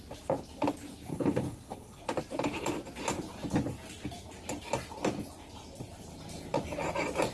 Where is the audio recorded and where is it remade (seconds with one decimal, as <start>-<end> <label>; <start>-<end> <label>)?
0.0-1.1 recorded; 1.1-2.0 remade; 2.0-7.3 recorded